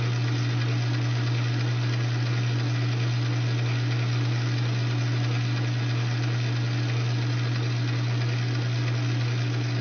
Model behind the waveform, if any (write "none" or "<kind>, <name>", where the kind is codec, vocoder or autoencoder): none